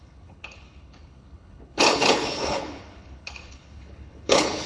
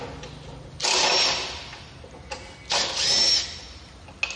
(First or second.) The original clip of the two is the second